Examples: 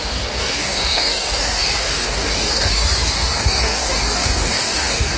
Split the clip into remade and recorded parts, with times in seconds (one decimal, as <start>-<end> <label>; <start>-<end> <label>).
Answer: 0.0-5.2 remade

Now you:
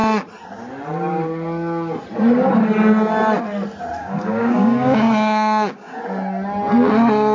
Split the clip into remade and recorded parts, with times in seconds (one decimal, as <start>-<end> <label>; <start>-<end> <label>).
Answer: 0.0-4.0 recorded; 4.0-6.0 remade; 6.0-7.3 recorded

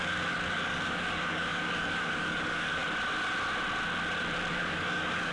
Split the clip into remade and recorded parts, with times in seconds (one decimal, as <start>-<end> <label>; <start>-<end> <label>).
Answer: 0.0-2.8 remade; 2.8-4.5 recorded; 4.5-5.3 remade

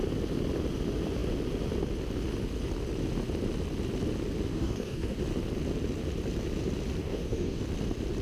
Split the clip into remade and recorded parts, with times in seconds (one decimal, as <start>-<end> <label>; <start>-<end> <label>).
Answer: 0.0-4.5 recorded; 4.5-5.2 remade; 5.2-7.0 recorded; 7.0-7.6 remade; 7.6-8.2 recorded